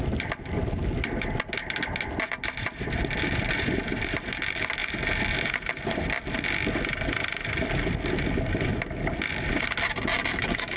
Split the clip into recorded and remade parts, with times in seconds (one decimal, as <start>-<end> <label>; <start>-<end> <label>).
0.0-4.8 remade; 4.8-5.7 recorded; 5.7-10.8 remade